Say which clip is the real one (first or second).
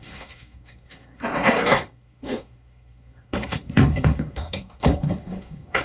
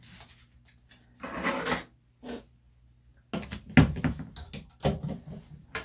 second